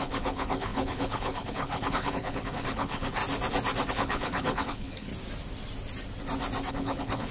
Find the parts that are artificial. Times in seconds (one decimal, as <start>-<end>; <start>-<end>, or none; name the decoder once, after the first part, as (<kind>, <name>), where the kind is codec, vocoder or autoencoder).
0.0-3.2 (codec, HILCodec); 3.9-5.1; 6.7-7.3